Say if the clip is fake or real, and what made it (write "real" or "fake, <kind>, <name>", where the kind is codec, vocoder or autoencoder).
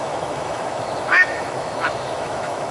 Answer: fake, autoencoder, DAC-VAE